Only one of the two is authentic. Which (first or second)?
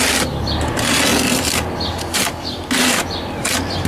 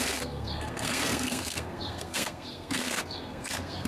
first